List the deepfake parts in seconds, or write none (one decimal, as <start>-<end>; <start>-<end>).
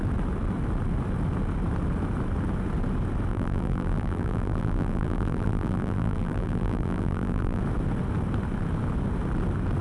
3.3-7.6